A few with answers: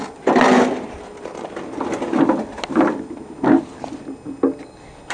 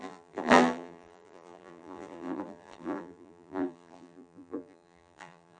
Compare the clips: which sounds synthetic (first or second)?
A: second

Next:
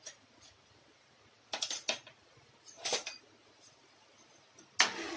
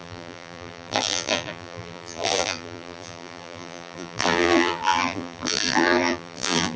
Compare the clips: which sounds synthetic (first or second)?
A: second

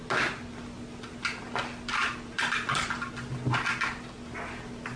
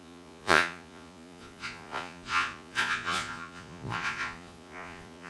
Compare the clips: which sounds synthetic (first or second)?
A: second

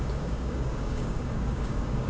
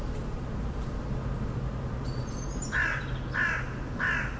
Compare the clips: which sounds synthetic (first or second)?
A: first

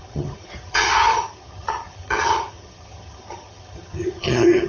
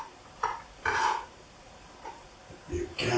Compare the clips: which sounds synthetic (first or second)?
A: first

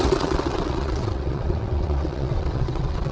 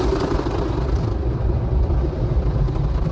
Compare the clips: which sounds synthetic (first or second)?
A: first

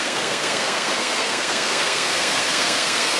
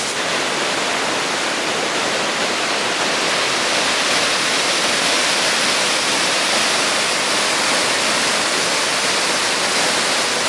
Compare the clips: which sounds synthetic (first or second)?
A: first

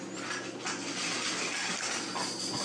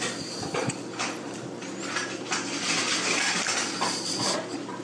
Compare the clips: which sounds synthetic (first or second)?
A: second